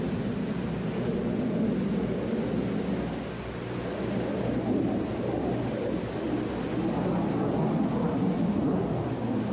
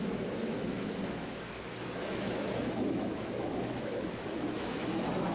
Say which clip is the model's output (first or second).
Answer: second